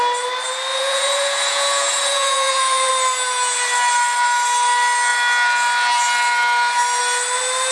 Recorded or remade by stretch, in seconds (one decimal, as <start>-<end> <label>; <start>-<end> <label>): 0.0-0.7 recorded; 0.7-2.9 remade; 2.9-7.7 recorded